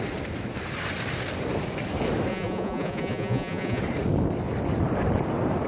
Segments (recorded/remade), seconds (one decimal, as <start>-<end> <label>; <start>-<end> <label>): 0.0-2.3 recorded; 2.3-3.8 remade; 3.8-5.7 recorded